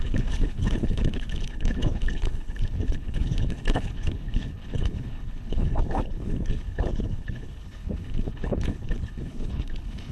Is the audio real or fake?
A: fake